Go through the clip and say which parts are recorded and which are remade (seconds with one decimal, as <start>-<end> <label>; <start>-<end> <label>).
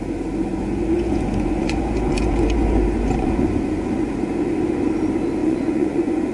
0.0-0.5 recorded; 0.5-4.3 remade; 4.3-5.4 recorded; 5.4-6.3 remade